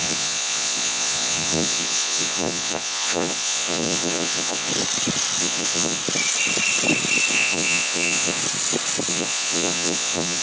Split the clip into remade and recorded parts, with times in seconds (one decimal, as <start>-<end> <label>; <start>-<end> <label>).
0.0-4.7 remade; 4.7-5.4 recorded; 5.4-6.0 remade; 6.0-7.3 recorded; 7.3-8.4 remade; 8.4-9.1 recorded; 9.1-10.4 remade